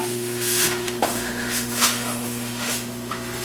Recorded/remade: remade